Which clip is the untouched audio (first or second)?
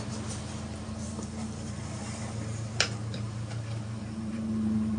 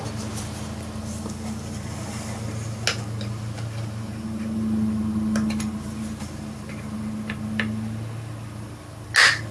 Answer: second